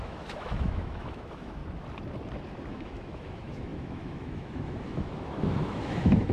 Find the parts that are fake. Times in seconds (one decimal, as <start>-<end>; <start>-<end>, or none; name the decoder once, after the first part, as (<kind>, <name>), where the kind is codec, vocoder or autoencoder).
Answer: 0.0-1.6 (autoencoder, DAC-VAE); 2.7-6.3